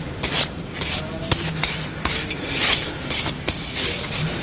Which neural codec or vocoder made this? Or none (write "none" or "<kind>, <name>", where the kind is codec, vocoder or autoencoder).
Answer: vocoder, BigVGAN v2